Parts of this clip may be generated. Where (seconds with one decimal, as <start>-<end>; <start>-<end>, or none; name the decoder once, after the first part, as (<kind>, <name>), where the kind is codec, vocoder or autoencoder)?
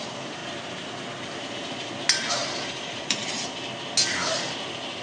0.0-0.4 (vocoder, BigVGAN v2); 2.3-3.2